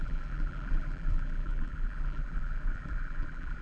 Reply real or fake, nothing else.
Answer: fake